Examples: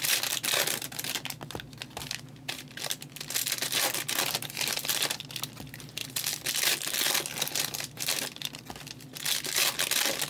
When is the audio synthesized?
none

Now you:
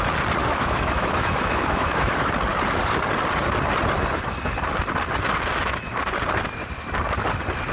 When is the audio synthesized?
0.4-2.1 (autoencoder, DAC-VAE)

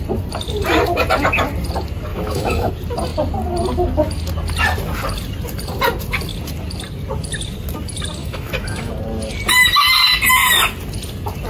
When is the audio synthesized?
2.1-2.7 (autoencoder, DAC-VAE); 8.2-8.9

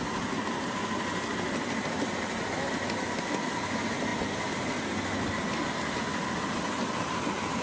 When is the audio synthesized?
none